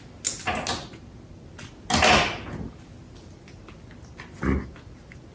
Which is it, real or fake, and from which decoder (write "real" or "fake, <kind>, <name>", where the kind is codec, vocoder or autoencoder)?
real